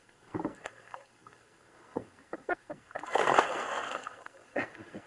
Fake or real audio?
fake